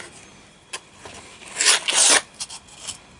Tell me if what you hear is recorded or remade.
recorded